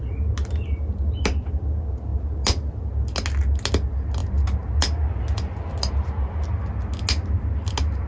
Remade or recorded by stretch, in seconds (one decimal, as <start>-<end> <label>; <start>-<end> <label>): 0.0-8.1 recorded